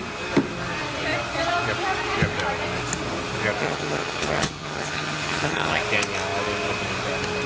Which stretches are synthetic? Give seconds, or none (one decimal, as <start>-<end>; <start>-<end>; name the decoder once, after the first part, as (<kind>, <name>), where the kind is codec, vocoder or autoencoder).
3.6-5.8 (vocoder, HiFi-GAN)